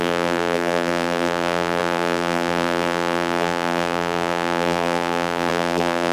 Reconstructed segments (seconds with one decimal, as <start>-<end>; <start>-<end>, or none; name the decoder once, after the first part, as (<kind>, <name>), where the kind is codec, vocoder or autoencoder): 0.0-6.1 (vocoder, BigVGAN v2)